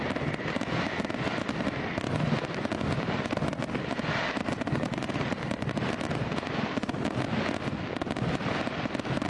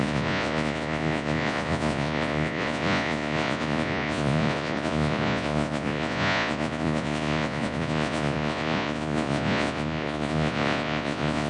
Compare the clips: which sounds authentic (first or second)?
first